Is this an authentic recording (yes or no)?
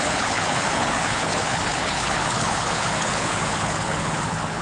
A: no